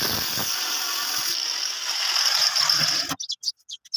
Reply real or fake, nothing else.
real